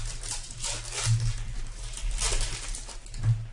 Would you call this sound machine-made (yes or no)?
no